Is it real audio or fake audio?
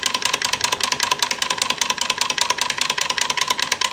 real